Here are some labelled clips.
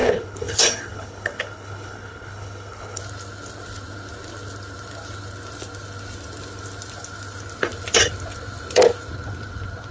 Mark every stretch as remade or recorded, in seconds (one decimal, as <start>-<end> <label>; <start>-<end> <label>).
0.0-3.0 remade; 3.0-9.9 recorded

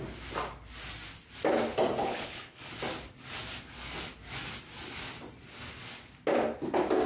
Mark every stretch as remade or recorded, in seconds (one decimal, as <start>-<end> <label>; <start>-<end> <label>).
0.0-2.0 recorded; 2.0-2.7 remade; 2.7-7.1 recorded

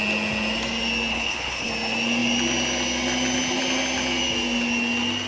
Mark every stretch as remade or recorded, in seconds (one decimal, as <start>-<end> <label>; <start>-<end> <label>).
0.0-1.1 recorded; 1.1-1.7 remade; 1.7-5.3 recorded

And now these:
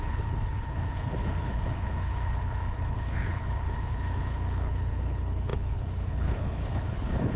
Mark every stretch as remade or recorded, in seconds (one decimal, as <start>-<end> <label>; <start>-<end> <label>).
0.0-7.4 remade

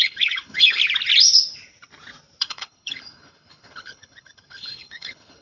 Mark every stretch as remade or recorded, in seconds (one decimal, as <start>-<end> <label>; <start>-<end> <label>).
0.0-0.8 remade; 0.8-2.4 recorded; 2.4-5.4 remade

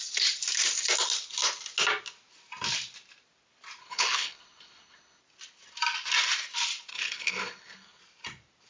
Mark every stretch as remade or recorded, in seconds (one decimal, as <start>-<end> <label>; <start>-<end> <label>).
0.0-3.8 recorded; 3.8-5.2 remade; 5.2-6.9 recorded; 6.9-8.0 remade; 8.0-8.7 recorded